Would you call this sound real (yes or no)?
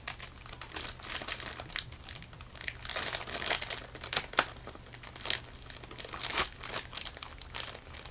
yes